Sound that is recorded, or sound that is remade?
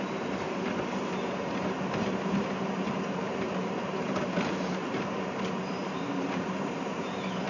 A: remade